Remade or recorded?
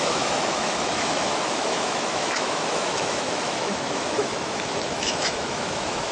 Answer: remade